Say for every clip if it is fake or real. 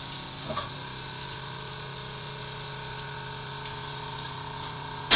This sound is real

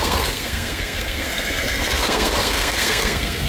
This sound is fake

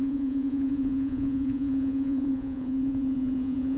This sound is fake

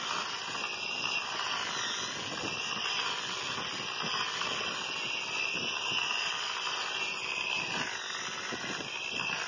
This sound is real